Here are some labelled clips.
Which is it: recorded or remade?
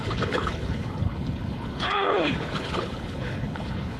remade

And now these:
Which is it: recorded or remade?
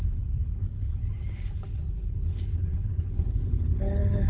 remade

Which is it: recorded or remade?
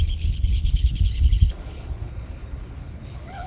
remade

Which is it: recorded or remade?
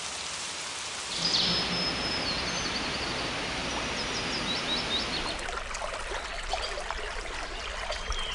recorded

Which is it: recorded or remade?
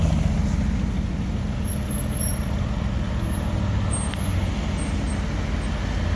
recorded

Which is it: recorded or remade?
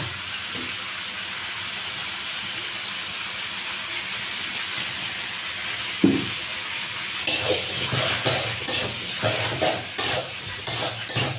recorded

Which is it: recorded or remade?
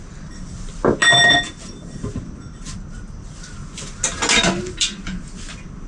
recorded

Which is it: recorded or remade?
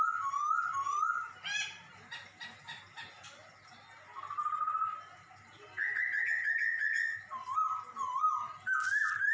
recorded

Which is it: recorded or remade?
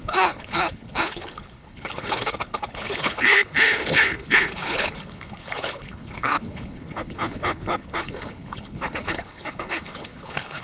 remade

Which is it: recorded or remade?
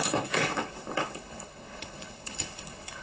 remade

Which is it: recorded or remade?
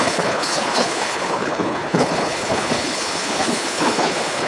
remade